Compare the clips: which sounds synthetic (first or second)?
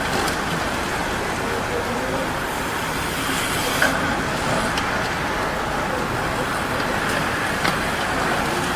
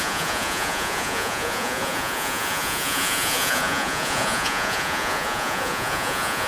second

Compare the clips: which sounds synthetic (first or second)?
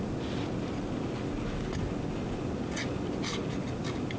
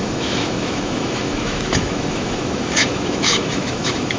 second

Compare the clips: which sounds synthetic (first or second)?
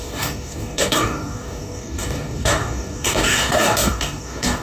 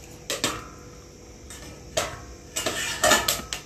first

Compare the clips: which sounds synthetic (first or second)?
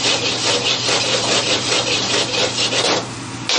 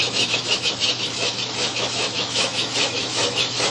second